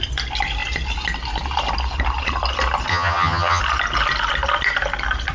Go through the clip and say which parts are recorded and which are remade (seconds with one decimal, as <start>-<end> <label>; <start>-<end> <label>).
0.0-2.9 recorded; 2.9-3.6 remade; 3.6-5.3 recorded